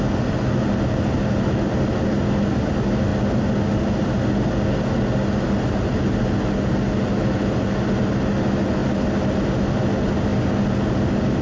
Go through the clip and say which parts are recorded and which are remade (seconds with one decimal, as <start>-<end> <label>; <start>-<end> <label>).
0.0-11.4 recorded